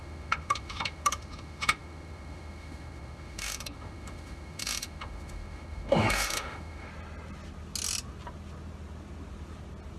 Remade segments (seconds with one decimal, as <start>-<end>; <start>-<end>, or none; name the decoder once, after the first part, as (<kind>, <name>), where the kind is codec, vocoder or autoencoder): 0.0-6.9 (autoencoder, DAC-VAE)